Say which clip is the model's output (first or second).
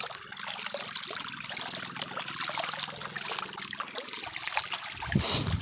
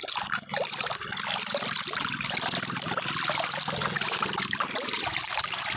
second